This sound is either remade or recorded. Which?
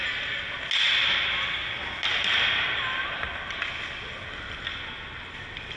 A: recorded